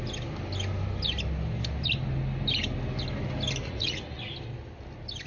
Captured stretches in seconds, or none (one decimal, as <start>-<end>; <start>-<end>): 0.0-3.6; 4.2-5.3